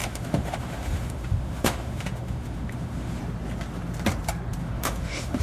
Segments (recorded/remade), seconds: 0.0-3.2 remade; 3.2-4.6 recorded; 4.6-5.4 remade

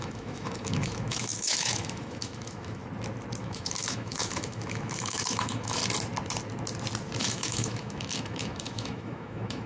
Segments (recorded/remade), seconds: 0.0-2.8 remade; 2.8-3.4 recorded; 3.4-5.8 remade; 5.8-7.2 recorded; 7.2-9.7 remade

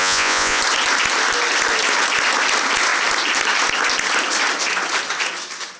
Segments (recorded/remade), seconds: 0.0-0.6 remade; 0.6-5.8 recorded